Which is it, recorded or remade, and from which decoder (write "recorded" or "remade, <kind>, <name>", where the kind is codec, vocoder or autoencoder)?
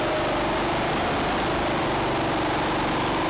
recorded